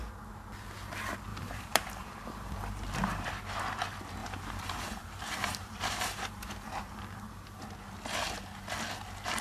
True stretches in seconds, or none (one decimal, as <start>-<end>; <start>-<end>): 0.0-1.3; 3.3-4.2; 7.6-9.4